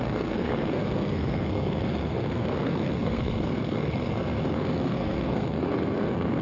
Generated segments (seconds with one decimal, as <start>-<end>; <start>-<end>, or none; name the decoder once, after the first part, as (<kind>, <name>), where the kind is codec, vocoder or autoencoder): 0.0-6.4 (codec, SNAC)